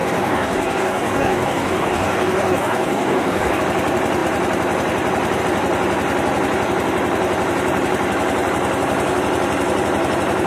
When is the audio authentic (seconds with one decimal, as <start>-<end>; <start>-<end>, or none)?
3.6-10.5